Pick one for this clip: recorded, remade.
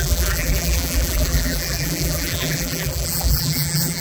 remade